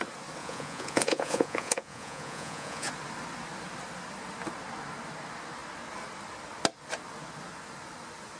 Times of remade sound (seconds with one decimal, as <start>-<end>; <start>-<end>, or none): 0.4-2.9